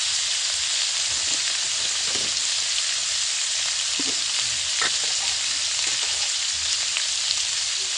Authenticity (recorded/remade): recorded